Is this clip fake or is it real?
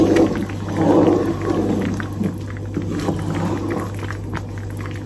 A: real